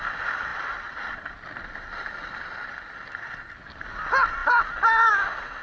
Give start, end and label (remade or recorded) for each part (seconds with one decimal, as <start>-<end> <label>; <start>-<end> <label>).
0.0-5.6 recorded